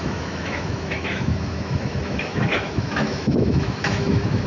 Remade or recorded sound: remade